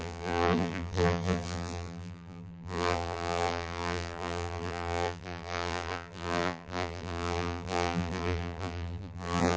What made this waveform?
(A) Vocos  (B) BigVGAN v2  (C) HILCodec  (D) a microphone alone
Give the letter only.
B